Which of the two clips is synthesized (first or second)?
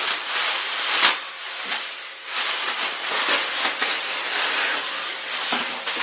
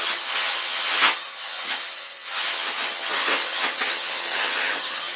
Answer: second